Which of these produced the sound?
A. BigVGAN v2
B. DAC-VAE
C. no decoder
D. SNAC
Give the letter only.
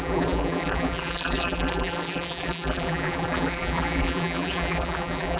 A